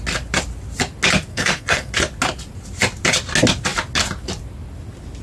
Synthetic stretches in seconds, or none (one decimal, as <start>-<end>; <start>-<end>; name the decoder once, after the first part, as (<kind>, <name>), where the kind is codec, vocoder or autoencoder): 1.3-1.9 (codec, SNAC)